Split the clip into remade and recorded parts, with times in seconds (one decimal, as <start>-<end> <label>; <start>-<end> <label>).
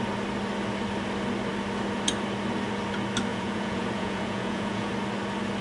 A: 0.0-3.3 recorded; 3.3-4.9 remade; 4.9-5.6 recorded